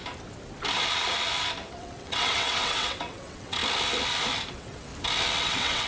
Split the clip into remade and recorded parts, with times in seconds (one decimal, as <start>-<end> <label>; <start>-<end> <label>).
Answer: 0.0-1.7 recorded; 1.7-3.6 remade; 3.6-4.5 recorded; 4.5-4.9 remade; 4.9-5.4 recorded; 5.4-5.9 remade